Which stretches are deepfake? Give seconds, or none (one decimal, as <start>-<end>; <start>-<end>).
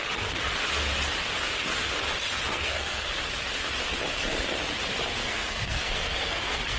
2.5-3.1; 5.2-6.8